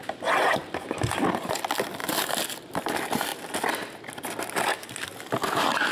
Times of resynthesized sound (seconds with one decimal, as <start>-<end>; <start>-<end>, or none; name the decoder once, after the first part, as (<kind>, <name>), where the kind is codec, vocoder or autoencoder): 0.0-2.0 (vocoder, BigVGAN v2); 2.6-5.9